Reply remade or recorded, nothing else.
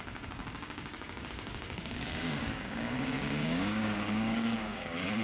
remade